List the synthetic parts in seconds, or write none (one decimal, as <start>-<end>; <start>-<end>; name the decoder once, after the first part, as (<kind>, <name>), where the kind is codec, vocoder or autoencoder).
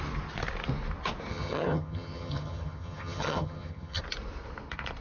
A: 1.3-4.0 (vocoder, HiFi-GAN)